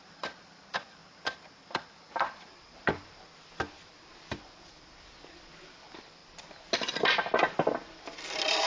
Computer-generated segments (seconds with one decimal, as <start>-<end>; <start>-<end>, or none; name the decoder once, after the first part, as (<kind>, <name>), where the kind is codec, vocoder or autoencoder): 0.0-1.0 (vocoder, BigVGAN v2); 2.1-2.8; 3.6-6.2; 7.0-8.7